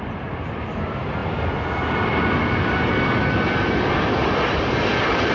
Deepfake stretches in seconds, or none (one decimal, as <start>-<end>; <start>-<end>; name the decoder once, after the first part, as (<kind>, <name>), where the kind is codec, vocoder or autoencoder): none